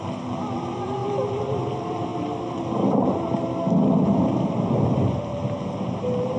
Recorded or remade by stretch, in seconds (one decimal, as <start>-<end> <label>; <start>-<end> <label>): 0.0-6.4 remade